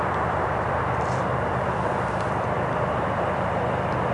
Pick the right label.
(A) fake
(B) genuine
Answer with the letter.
A